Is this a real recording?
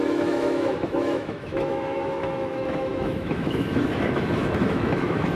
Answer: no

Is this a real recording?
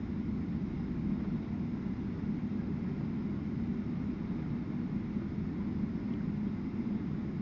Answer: yes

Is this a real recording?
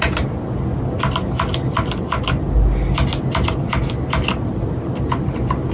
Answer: yes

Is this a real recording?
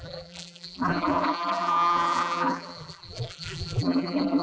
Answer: no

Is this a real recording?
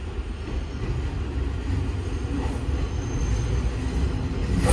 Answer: yes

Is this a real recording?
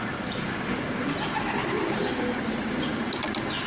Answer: yes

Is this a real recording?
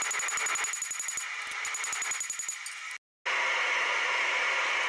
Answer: yes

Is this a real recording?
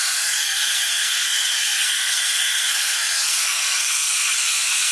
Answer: no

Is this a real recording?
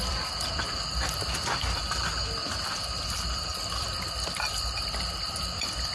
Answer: no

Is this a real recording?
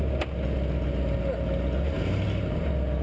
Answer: yes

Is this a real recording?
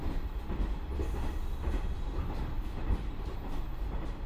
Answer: yes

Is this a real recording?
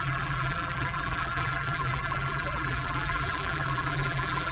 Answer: no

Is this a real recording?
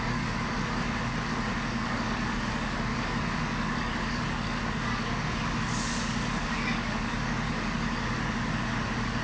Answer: no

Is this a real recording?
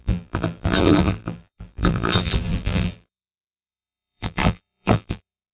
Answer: no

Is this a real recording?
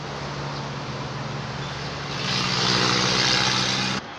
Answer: yes